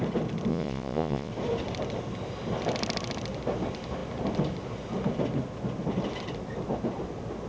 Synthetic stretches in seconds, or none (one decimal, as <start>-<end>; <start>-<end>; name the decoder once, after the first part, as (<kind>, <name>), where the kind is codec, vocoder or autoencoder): 0.5-1.3 (vocoder, Vocos)